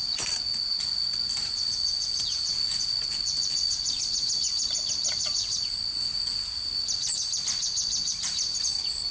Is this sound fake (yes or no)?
no